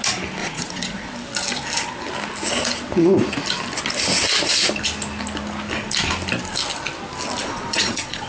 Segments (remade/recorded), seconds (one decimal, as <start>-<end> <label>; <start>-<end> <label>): 0.0-0.4 recorded; 0.4-1.1 remade; 1.1-7.4 recorded; 7.4-8.3 remade